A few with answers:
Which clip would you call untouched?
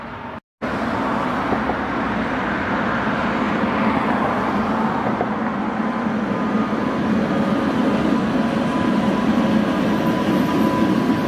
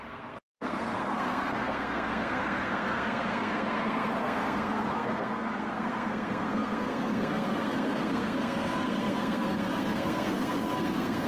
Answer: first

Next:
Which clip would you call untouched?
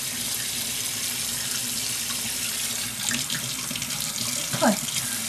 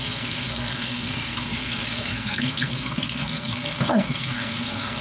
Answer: first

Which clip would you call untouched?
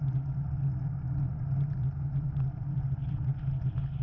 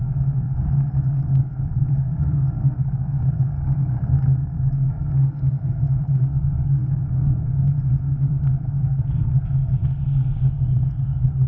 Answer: first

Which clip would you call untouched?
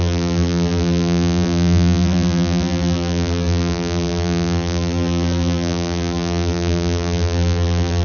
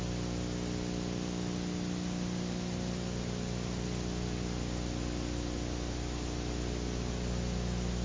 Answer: second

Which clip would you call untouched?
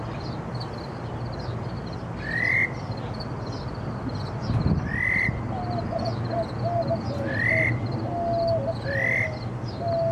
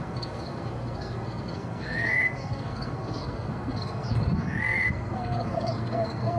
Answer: first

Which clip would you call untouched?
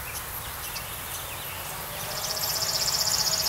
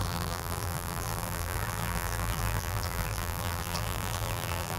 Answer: first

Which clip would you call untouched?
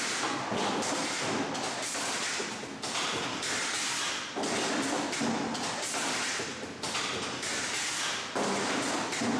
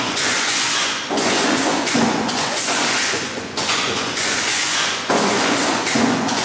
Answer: first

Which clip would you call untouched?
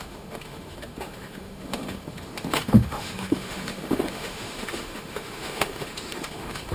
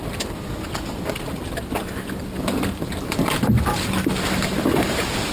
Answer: second